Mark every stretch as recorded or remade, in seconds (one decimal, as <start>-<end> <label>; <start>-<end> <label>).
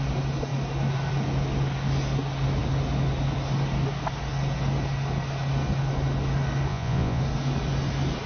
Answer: 0.0-6.7 recorded; 6.7-7.2 remade; 7.2-8.3 recorded